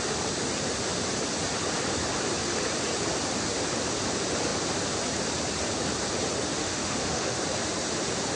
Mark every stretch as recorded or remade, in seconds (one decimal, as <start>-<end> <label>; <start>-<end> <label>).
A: 0.0-6.6 recorded; 6.6-7.4 remade; 7.4-8.4 recorded